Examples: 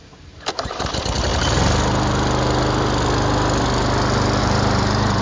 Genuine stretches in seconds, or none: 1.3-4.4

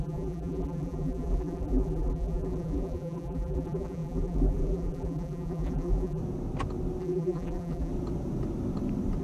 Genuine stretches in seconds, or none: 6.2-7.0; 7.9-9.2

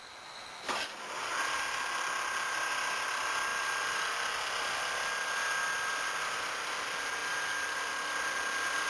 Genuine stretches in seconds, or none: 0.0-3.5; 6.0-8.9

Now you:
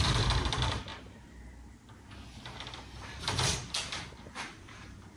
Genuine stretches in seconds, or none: 0.9-3.2